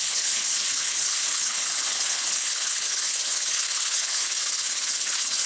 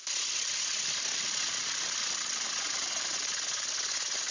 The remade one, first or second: first